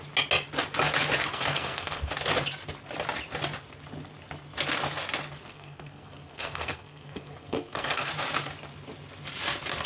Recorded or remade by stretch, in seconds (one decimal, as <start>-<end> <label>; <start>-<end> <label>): 0.0-1.3 recorded; 1.3-2.1 remade; 2.1-5.5 recorded; 5.5-8.1 remade; 8.1-9.9 recorded